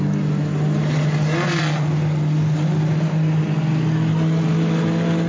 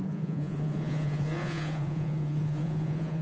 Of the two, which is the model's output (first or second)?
second